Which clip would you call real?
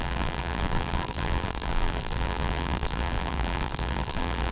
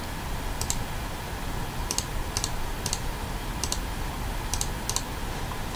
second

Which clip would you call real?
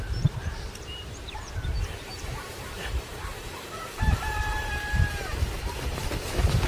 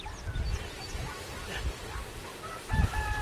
second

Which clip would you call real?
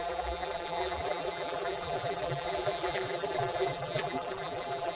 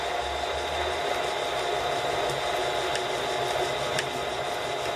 second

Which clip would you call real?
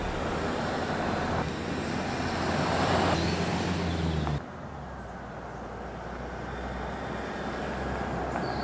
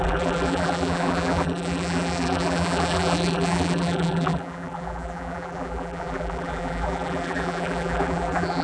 first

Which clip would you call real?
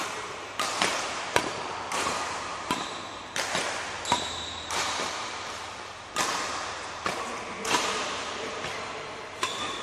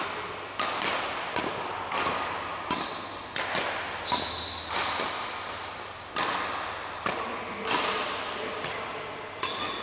second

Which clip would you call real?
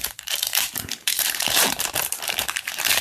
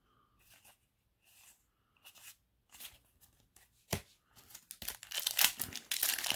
second